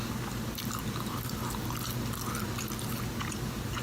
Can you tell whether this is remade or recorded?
recorded